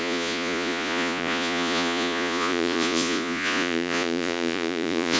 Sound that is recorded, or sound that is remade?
remade